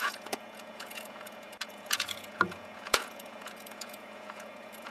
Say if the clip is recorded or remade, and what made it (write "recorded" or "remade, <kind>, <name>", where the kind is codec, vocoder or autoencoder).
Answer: remade, vocoder, Vocos